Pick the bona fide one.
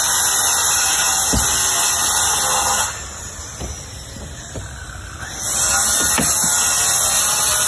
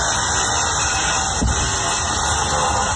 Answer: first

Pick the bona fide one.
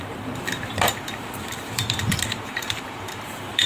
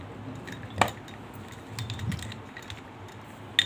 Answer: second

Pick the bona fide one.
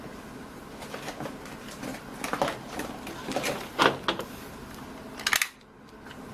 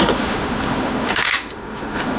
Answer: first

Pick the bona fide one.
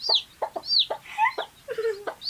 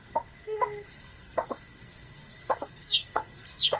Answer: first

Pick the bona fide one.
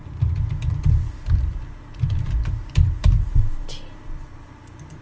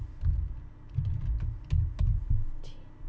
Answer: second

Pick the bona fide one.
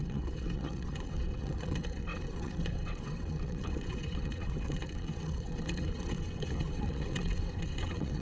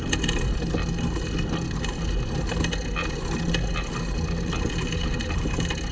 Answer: second